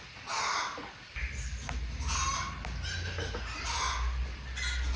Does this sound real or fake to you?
real